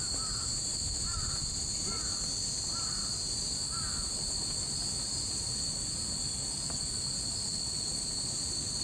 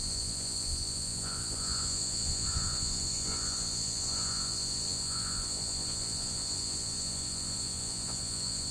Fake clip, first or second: second